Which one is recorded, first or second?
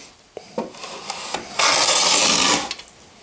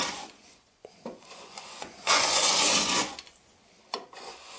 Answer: first